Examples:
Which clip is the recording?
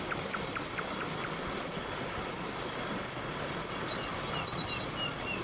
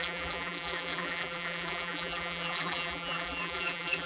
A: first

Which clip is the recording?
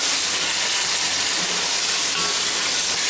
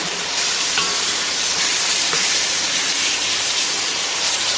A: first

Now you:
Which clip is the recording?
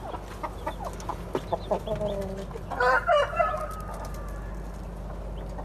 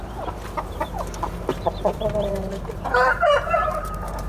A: first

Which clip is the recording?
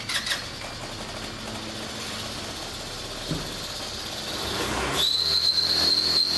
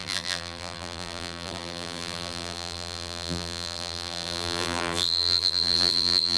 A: first